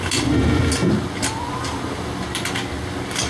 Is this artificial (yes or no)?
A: no